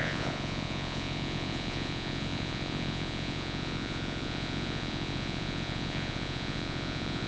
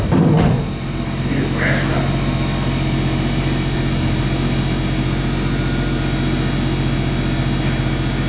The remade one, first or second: first